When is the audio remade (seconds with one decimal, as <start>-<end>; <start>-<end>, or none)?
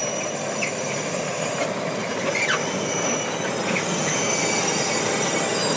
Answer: none